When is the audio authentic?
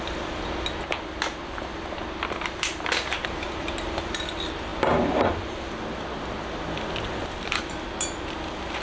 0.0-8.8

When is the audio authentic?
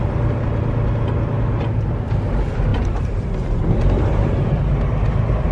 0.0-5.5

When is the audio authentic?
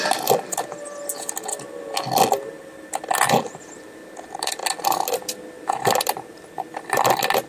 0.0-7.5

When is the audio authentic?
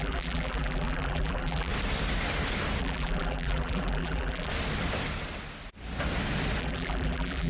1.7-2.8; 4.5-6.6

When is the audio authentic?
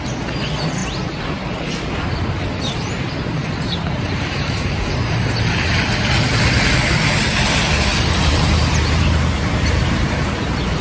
0.0-0.8; 5.4-7.9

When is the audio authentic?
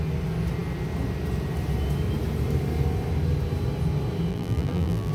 0.0-4.3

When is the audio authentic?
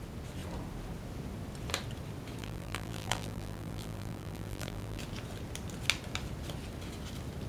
0.0-2.4; 5.0-7.5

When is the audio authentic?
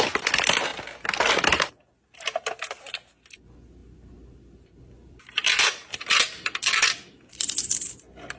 0.0-3.8; 7.9-8.4